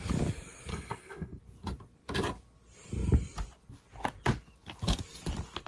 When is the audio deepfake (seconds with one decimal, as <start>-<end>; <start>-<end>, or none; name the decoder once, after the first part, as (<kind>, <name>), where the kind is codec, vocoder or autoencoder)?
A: 0.7-1.4 (codec, SNAC)